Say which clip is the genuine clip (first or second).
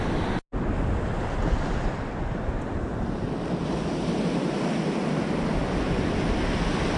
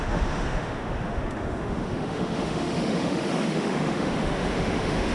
first